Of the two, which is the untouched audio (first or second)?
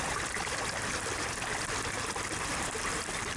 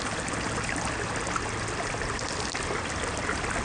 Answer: second